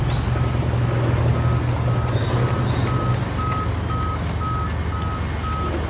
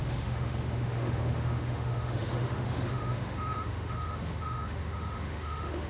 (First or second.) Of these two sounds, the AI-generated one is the second